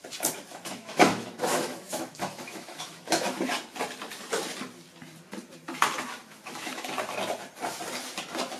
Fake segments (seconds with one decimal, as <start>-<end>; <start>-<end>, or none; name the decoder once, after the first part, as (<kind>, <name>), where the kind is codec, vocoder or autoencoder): 0.5-3.4 (autoencoder, DAC-VAE); 6.2-6.9